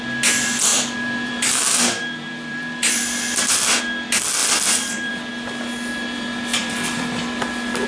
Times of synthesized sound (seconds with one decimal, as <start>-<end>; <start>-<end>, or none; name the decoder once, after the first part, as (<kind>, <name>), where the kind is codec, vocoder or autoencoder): 0.7-3.8 (vocoder, BigVGAN v2); 4.4-5.1; 6.5-7.4

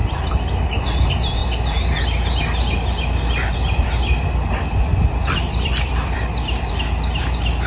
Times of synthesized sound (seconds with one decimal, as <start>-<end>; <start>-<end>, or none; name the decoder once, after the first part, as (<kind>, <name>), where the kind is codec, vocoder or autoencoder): 0.0-0.6 (vocoder, BigVGAN v2); 5.2-6.7

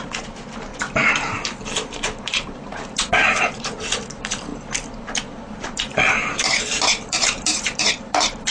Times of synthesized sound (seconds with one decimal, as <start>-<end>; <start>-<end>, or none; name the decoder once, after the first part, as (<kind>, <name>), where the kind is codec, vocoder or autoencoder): 0.0-0.7 (vocoder, BigVGAN v2); 2.2-8.5

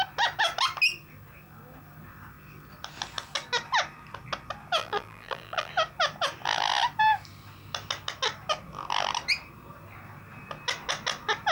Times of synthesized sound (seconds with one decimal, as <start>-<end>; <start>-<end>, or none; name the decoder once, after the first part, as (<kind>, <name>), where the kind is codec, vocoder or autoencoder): 4.8-5.7 (vocoder, BigVGAN v2)

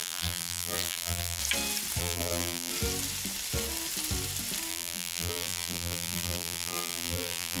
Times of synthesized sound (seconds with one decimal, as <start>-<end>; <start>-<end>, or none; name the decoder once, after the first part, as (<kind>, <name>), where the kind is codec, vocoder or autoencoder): 0.0-1.4 (vocoder, BigVGAN v2); 2.0-2.7; 4.7-7.6

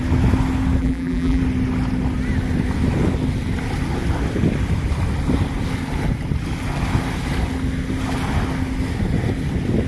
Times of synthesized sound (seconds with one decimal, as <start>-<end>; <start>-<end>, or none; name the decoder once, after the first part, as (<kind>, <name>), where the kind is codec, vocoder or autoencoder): 0.8-1.4 (vocoder, BigVGAN v2)

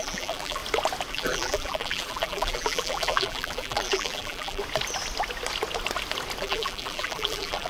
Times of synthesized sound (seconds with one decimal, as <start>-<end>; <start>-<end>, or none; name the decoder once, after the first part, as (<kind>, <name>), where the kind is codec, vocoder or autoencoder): 0.0-0.6 (vocoder, BigVGAN v2); 1.1-4.6; 6.4-7.7

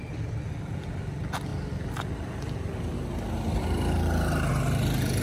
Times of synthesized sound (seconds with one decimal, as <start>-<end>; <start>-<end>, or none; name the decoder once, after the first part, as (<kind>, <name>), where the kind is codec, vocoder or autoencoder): none